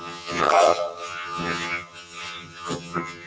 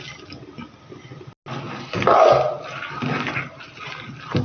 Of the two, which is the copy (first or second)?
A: first